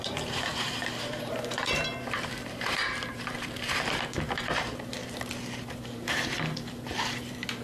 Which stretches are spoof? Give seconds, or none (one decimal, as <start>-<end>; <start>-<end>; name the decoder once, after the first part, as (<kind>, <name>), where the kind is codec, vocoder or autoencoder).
0.0-7.6 (vocoder, BigVGAN v2)